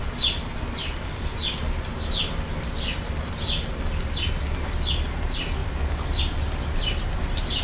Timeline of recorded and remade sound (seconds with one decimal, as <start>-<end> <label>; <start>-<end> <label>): 0.0-7.6 recorded